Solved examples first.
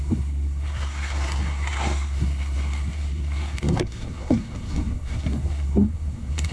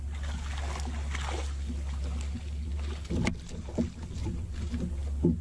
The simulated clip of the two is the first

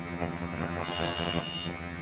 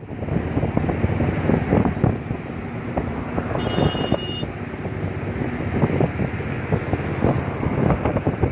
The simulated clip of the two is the first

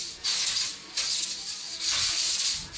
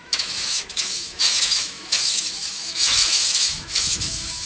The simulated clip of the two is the second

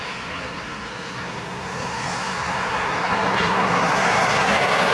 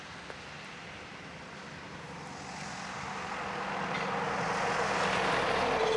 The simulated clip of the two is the first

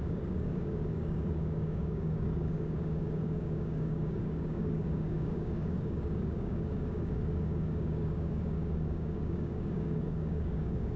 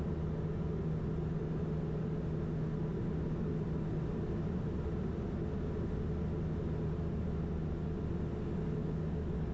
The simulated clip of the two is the first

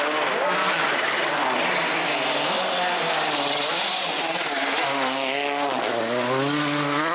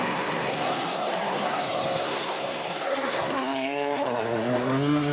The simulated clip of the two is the second